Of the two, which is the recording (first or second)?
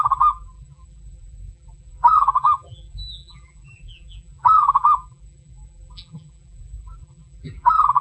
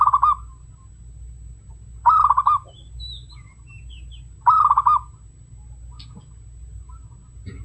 second